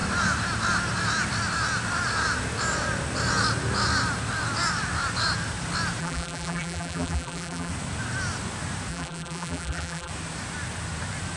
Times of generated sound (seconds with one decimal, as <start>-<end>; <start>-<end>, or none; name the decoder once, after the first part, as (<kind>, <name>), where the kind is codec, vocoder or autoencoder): 6.0-7.7 (vocoder, BigVGAN v2); 8.9-10.1